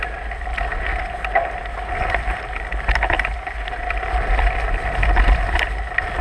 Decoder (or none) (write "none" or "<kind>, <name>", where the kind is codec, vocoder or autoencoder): none